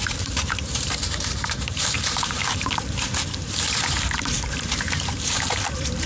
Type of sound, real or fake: fake